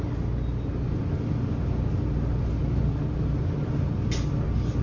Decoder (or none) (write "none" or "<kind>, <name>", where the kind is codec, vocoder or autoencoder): none